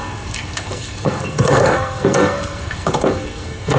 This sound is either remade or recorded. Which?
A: remade